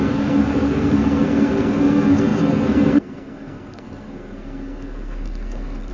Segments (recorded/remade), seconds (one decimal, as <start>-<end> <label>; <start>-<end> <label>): 0.0-5.9 remade